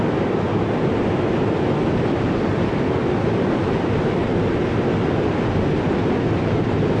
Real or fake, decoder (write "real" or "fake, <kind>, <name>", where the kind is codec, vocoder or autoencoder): real